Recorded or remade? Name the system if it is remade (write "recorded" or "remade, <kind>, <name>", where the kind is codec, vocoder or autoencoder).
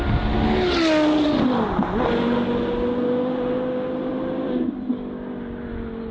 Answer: recorded